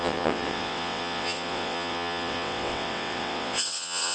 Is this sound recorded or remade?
remade